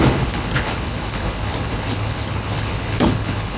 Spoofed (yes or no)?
yes